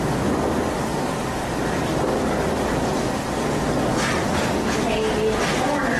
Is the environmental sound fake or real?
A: real